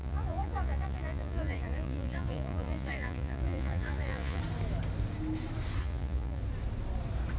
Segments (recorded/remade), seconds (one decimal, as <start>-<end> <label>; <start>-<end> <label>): 0.0-4.4 remade; 4.4-5.8 recorded; 5.8-6.4 remade; 6.4-7.4 recorded